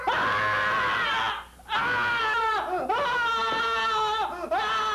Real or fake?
real